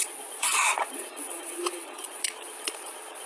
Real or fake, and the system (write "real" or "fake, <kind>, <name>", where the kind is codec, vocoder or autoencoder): fake, vocoder, Vocos